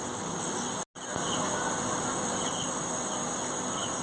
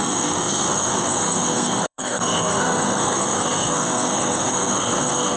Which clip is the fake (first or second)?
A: second